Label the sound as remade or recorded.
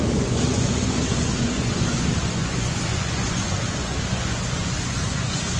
remade